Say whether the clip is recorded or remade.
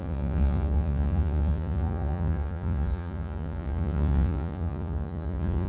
remade